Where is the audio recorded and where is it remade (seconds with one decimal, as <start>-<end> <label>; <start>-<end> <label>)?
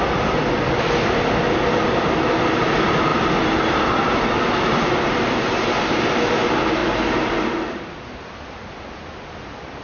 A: 0.0-9.8 recorded